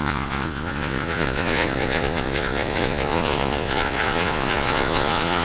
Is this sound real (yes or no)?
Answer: no